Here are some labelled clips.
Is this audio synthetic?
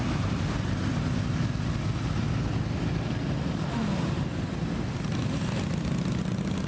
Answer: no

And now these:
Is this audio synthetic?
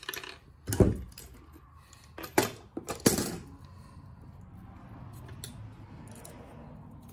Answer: no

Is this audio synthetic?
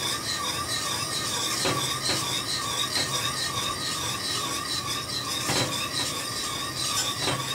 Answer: no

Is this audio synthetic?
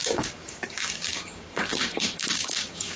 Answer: yes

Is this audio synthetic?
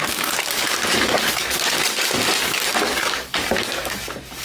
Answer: yes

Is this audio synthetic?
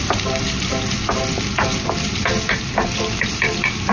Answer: no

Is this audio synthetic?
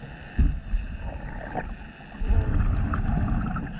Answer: no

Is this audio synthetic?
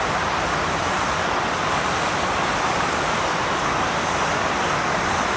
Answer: no